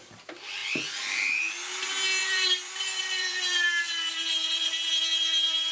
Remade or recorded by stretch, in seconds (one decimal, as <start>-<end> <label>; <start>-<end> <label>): 0.0-0.6 recorded; 0.6-1.5 remade; 1.5-2.2 recorded; 2.2-5.7 remade